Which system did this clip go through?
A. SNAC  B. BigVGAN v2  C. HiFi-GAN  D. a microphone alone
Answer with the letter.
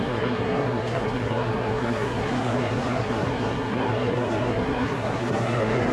A